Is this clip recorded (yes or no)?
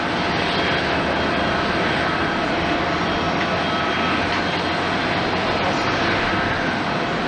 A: yes